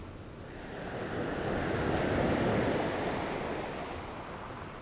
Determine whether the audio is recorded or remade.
recorded